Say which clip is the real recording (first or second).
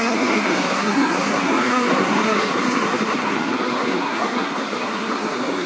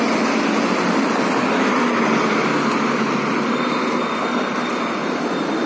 second